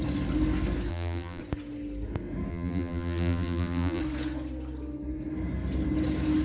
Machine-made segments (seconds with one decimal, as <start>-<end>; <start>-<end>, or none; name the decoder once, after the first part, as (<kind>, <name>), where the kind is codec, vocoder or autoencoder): 0.9-1.4 (vocoder, BigVGAN v2); 2.5-4.0